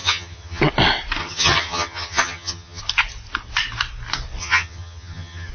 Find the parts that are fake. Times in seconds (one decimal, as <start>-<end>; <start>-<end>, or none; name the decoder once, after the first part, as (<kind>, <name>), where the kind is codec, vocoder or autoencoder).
0.0-0.6 (vocoder, HiFi-GAN); 1.2-2.8; 4.4-5.5